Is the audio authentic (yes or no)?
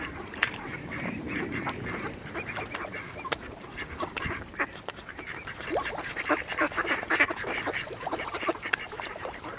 no